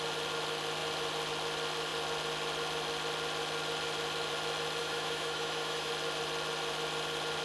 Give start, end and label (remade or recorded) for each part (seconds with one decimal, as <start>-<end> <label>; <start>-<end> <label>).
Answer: 0.0-4.8 recorded; 4.8-5.9 remade; 5.9-7.4 recorded